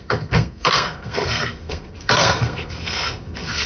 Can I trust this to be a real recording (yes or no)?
no